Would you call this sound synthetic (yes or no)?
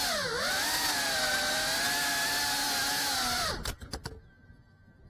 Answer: no